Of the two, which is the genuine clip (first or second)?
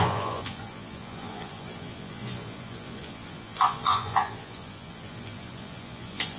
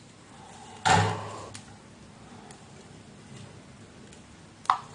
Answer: second